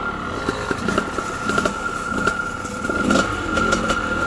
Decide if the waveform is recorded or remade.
recorded